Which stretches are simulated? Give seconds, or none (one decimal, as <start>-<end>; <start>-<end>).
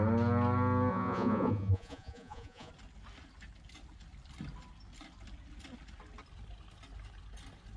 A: 0.9-2.7